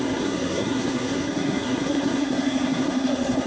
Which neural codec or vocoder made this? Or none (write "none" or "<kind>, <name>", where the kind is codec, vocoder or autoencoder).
codec, SNAC